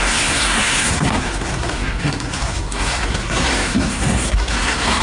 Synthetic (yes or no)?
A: yes